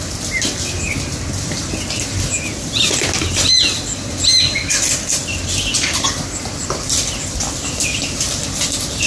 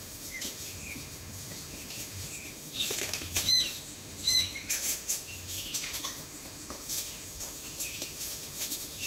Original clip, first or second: first